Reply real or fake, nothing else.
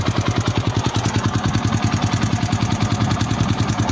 fake